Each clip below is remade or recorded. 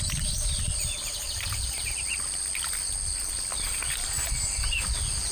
recorded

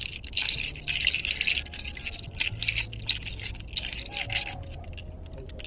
recorded